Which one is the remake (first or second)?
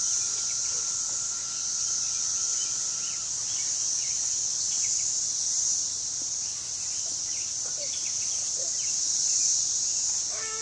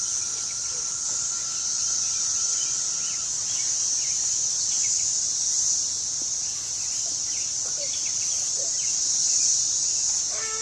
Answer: second